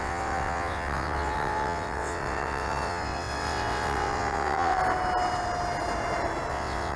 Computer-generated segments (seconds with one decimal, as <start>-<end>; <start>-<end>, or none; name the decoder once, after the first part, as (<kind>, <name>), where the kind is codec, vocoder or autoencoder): 0.0-4.8 (vocoder, WaveNeXt); 6.5-7.0